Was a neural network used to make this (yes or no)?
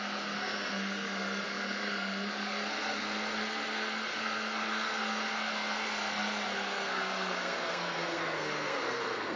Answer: yes